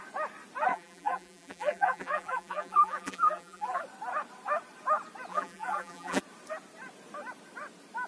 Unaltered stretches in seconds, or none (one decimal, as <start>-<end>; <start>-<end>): 0.0-0.7; 3.8-5.3; 6.2-8.1